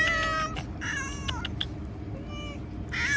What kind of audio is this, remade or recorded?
recorded